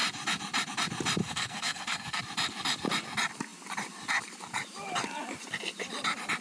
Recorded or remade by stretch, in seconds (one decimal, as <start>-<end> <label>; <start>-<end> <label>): 0.0-1.2 recorded; 1.2-2.2 remade; 2.2-6.4 recorded